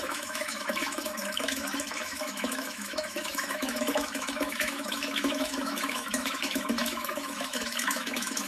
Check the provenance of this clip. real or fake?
fake